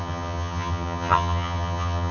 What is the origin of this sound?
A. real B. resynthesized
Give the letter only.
B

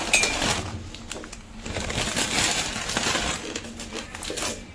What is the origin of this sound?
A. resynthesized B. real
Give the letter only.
B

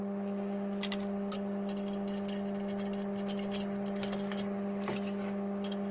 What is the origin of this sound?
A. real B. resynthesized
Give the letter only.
A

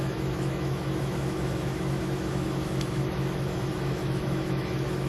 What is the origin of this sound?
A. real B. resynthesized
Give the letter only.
B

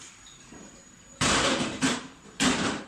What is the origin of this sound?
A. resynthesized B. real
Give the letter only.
A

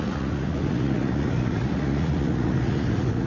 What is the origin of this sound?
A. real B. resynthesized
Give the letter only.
B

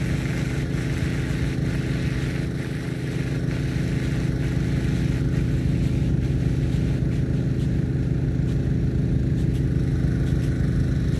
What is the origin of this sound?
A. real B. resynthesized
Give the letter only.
A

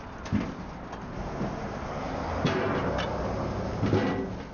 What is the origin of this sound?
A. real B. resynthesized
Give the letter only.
A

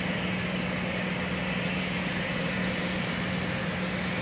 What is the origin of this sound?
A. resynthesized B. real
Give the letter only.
B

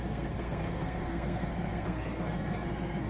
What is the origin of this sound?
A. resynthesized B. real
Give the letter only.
A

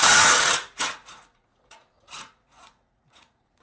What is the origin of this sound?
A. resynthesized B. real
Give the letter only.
A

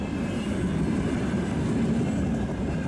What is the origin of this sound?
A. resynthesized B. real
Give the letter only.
B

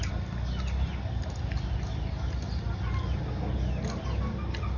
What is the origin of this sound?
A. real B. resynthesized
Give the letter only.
A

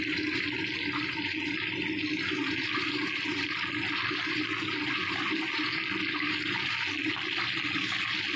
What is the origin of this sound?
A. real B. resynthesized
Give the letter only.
A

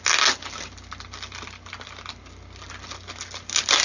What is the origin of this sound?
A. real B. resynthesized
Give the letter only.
A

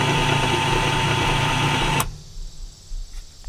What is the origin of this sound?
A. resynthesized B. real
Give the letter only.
B